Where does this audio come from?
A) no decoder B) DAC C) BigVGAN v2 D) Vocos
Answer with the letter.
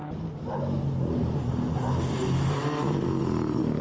A